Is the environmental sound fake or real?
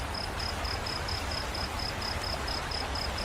real